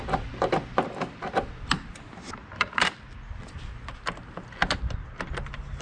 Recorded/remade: recorded